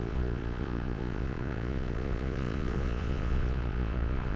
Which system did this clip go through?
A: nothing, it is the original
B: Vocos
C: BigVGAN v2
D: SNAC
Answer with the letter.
B